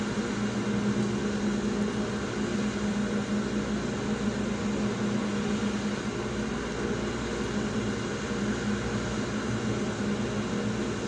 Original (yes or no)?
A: yes